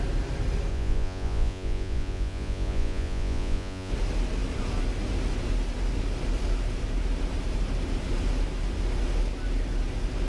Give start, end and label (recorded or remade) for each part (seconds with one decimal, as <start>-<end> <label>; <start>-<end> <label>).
0.0-0.7 recorded; 0.7-3.9 remade; 3.9-10.3 recorded

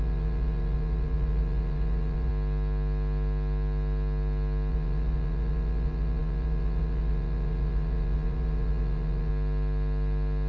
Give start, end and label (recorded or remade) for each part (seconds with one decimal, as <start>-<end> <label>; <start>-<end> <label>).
0.0-2.3 remade; 2.3-4.7 recorded; 4.7-9.3 remade; 9.3-10.5 recorded

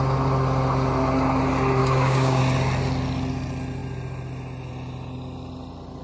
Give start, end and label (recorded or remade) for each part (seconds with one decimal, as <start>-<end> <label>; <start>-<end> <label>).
0.0-1.8 recorded; 1.8-2.4 remade; 2.4-6.0 recorded

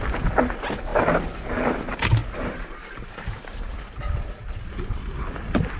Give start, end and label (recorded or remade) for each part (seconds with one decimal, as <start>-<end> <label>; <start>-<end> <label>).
0.0-2.2 recorded; 2.2-4.0 remade; 4.0-5.8 recorded

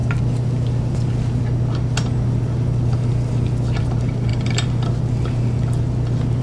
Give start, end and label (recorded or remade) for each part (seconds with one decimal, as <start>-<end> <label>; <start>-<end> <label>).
0.0-4.3 recorded; 4.3-6.4 remade

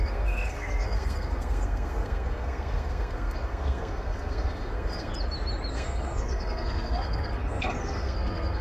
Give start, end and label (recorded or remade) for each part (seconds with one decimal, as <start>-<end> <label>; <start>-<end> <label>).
0.0-5.1 remade; 5.1-5.7 recorded; 5.7-8.6 remade

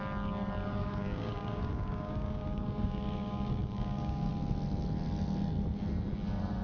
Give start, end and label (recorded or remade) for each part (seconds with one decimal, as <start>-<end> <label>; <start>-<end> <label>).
0.0-0.8 recorded; 0.8-4.3 remade; 4.3-6.6 recorded

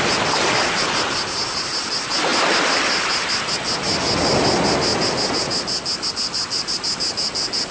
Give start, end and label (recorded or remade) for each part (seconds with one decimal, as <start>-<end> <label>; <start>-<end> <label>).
0.0-7.7 recorded